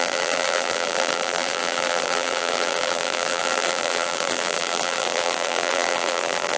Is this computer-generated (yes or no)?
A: yes